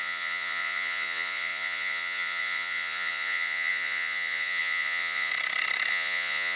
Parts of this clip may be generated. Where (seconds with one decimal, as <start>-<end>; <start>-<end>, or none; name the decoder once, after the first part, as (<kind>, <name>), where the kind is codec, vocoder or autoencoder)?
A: 0.0-5.3 (vocoder, Vocos); 5.9-6.6